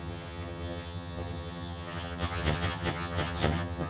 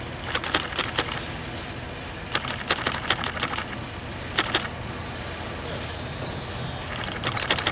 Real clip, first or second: second